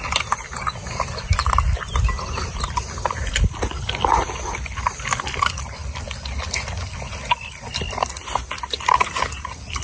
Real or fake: real